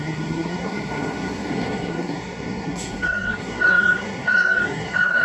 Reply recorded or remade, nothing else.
remade